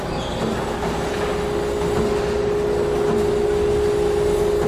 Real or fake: real